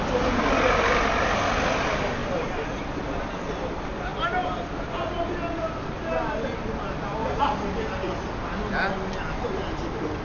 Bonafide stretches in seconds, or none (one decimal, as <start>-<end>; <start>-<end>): 0.0-2.2; 3.0-10.2